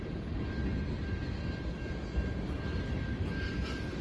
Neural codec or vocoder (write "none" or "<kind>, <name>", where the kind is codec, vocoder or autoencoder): none